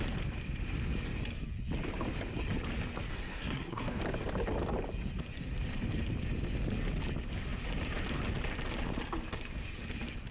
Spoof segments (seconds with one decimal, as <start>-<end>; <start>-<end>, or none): 3.1-4.0